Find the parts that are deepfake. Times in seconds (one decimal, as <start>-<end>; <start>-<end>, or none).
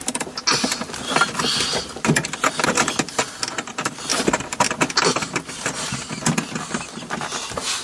none